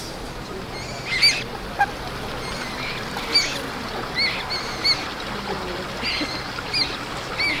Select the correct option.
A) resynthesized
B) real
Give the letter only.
B